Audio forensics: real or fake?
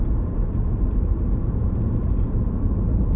real